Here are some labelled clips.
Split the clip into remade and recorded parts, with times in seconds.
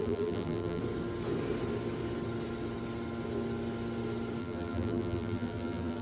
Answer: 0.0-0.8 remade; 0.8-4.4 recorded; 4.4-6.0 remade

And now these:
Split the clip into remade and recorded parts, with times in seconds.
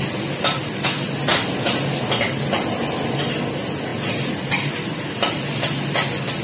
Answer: 0.0-1.3 recorded; 1.3-3.5 remade; 3.5-3.9 recorded; 3.9-4.7 remade; 4.7-6.4 recorded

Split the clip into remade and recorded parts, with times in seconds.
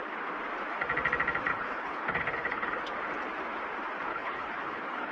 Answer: 0.0-1.5 recorded; 1.5-2.8 remade; 2.8-4.1 recorded; 4.1-5.1 remade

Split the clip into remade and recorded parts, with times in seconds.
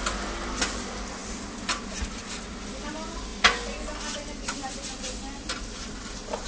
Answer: 0.0-6.5 recorded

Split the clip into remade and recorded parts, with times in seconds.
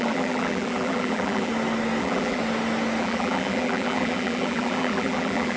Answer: 0.0-1.5 remade; 1.5-2.0 recorded; 2.0-2.4 remade; 2.4-3.0 recorded; 3.0-5.6 remade